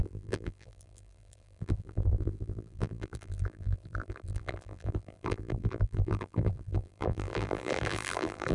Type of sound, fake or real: fake